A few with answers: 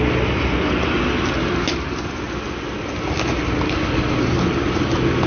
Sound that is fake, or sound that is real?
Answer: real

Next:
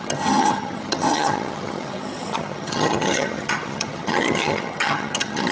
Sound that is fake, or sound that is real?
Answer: fake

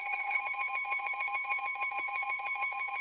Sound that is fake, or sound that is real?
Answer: fake